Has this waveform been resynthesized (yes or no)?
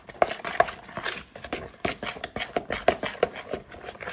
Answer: no